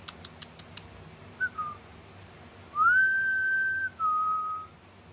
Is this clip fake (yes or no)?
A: no